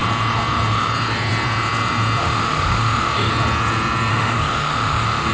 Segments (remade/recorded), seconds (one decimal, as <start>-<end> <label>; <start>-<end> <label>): 0.0-2.2 recorded; 2.2-3.3 remade; 3.3-4.1 recorded; 4.1-5.3 remade